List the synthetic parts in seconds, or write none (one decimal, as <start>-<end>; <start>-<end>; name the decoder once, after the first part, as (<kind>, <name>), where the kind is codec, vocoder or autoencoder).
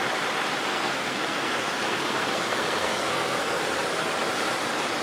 0.7-3.6 (codec, SNAC)